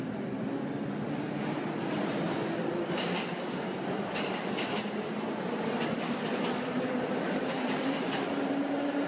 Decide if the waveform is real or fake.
real